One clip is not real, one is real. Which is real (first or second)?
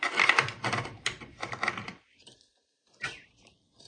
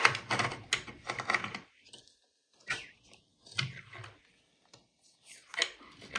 second